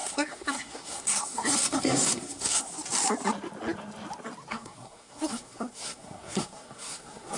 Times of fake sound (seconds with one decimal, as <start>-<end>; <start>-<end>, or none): 0.0-2.7; 4.5-7.4